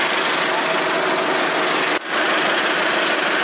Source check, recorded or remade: recorded